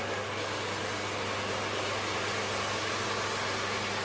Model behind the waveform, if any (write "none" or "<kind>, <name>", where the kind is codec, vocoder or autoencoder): none